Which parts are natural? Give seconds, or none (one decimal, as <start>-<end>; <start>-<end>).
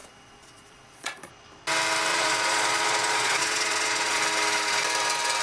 1.3-2.1; 4.2-5.4